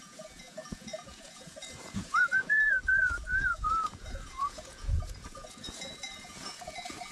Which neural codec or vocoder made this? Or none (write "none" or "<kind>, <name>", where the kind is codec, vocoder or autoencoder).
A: vocoder, Vocos